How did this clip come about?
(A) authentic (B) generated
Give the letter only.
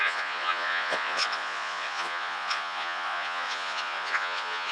B